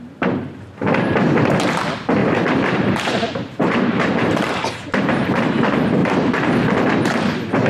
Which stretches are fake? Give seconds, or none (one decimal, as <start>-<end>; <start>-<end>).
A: 2.2-5.5; 6.0-7.2